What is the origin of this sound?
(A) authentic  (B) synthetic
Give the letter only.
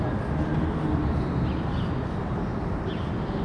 A